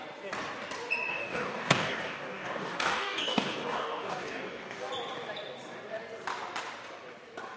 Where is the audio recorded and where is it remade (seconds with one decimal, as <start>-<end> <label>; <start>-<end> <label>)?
0.0-1.1 recorded; 1.1-4.9 remade; 4.9-7.6 recorded